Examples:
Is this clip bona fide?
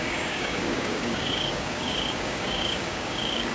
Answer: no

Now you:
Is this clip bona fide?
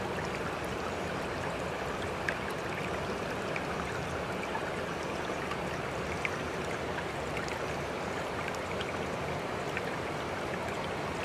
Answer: yes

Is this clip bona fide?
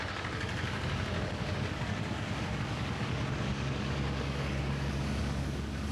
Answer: no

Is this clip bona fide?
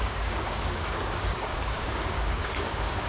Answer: no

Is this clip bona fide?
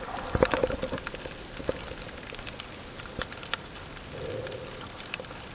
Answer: yes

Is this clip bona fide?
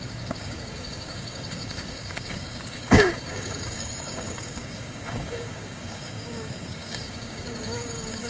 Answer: no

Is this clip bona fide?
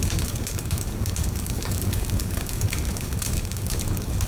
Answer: no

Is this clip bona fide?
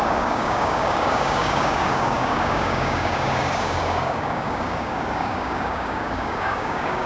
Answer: no